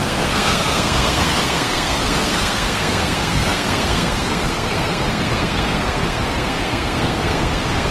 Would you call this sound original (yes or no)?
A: no